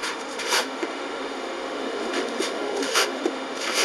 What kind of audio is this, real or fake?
fake